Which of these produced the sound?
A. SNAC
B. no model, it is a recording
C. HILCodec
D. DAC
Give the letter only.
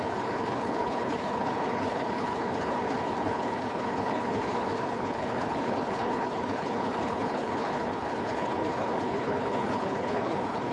C